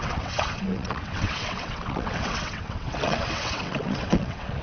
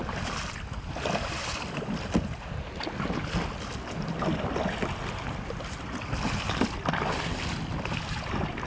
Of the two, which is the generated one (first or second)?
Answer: first